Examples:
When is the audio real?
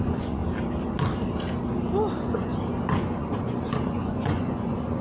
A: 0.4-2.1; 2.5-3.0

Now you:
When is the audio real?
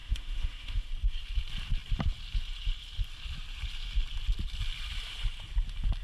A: 0.9-6.0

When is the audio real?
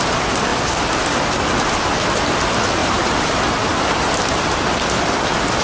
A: 0.0-2.8; 3.5-5.6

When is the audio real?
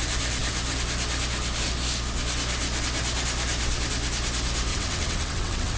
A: 0.0-4.7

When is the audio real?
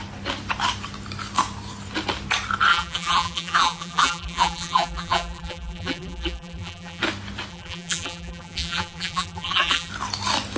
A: 0.0-2.7; 7.0-7.5; 9.9-10.6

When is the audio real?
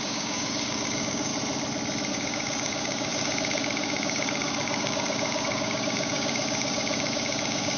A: 1.3-2.1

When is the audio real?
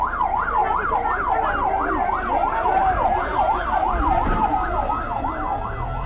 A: 0.0-3.3; 4.2-6.1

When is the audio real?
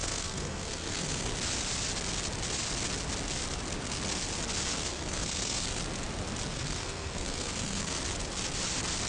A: 1.3-4.7; 5.8-6.5; 8.0-9.1